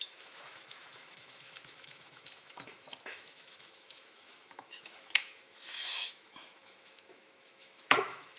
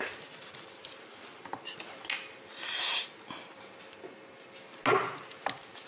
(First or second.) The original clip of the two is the second